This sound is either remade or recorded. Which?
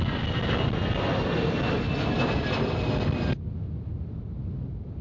recorded